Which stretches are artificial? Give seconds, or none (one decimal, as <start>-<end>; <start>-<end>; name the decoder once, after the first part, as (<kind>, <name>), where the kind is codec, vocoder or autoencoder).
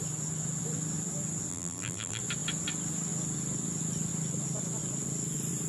1.5-2.2 (vocoder, BigVGAN v2)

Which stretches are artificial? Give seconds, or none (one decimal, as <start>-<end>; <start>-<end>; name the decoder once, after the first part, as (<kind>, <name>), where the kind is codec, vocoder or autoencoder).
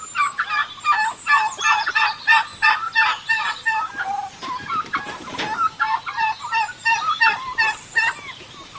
none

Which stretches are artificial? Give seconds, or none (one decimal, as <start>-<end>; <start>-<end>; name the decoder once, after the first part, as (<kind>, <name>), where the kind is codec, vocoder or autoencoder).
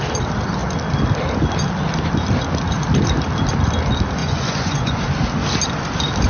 4.2-5.0 (vocoder, Vocos)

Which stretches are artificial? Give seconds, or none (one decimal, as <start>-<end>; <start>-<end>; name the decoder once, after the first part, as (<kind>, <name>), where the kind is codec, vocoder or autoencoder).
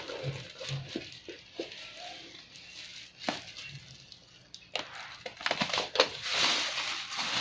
none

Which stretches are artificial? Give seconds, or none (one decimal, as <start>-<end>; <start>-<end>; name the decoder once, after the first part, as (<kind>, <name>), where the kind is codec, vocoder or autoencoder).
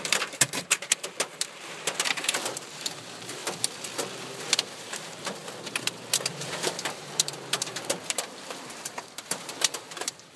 0.0-3.4 (vocoder, BigVGAN v2); 4.5-5.4; 6.3-10.4